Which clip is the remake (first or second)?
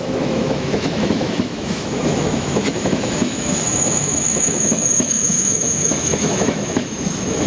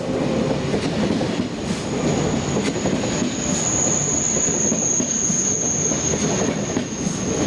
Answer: first